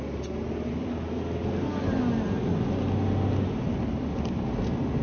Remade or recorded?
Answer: recorded